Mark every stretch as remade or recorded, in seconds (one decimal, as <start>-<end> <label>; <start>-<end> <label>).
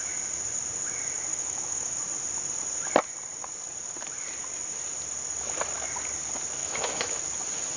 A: 0.0-1.3 recorded; 1.3-2.0 remade; 2.0-6.6 recorded; 6.6-7.2 remade; 7.2-7.8 recorded